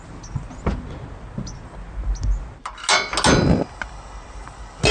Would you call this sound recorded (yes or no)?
yes